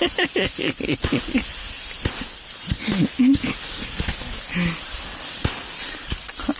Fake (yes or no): no